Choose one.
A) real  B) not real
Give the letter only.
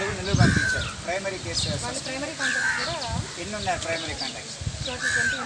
A